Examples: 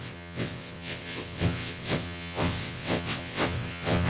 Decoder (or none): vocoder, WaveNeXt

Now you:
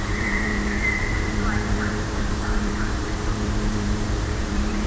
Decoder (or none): vocoder, BigVGAN v2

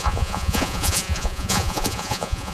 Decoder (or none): vocoder, Vocos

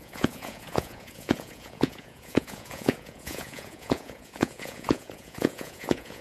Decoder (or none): vocoder, Vocos